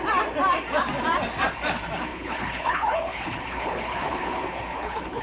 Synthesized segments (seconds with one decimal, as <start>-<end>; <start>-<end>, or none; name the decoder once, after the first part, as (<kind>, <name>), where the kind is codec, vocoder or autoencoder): 2.1-5.2 (codec, HILCodec)